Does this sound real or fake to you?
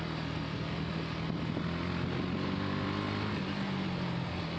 real